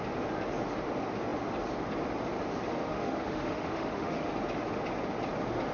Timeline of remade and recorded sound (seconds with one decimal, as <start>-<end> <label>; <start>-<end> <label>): 0.0-2.7 recorded; 2.7-4.3 remade; 4.3-5.7 recorded